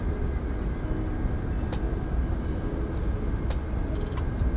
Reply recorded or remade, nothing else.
recorded